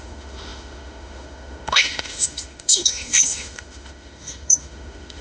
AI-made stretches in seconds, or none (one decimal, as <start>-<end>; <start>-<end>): 0.0-5.2